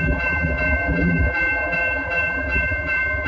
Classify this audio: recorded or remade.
remade